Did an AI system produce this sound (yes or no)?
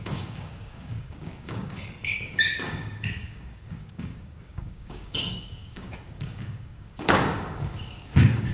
yes